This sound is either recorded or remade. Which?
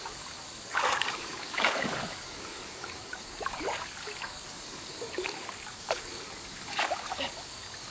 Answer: remade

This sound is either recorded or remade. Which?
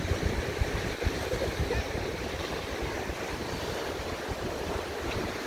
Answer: recorded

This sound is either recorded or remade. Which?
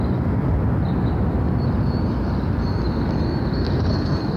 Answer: recorded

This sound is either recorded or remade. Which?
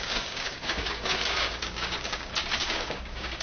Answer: remade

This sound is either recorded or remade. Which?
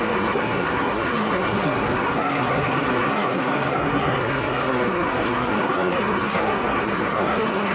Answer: remade